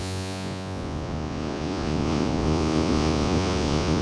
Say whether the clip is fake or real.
fake